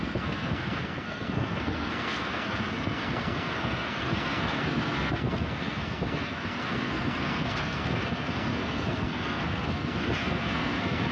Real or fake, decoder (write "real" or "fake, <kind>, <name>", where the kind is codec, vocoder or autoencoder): fake, codec, SNAC